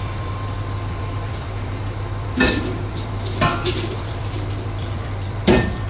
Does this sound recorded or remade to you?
remade